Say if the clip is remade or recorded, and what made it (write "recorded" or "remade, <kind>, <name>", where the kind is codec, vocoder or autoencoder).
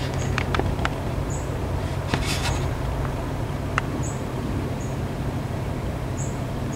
remade, vocoder, BigVGAN v2